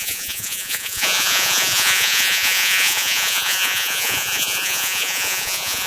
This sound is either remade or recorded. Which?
remade